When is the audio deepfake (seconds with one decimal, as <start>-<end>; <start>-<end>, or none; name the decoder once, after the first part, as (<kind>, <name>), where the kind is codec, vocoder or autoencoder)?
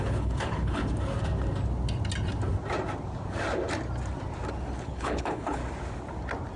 0.0-0.8 (codec, HILCodec); 4.8-5.6